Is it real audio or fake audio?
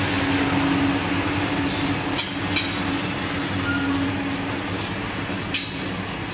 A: real